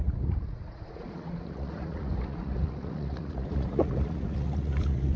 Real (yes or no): no